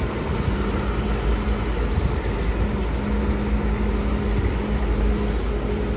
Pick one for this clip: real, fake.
real